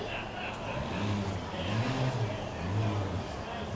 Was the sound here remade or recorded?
recorded